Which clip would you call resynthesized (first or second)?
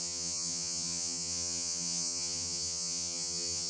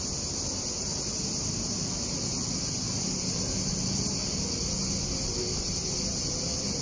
first